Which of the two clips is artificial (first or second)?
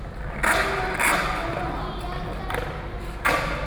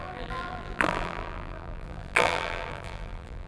second